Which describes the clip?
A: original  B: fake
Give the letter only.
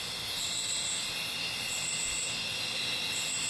B